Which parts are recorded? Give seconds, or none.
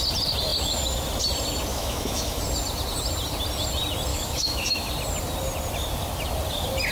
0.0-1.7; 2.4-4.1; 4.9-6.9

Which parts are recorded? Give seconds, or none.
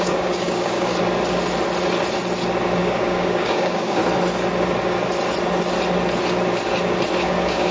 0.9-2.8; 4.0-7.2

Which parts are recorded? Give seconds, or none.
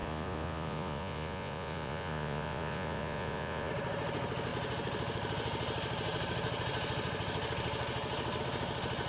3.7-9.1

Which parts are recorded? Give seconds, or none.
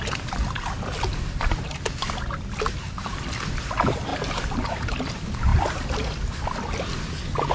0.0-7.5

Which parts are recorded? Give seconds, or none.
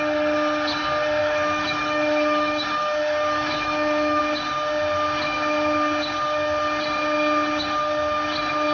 0.0-1.2; 4.2-8.7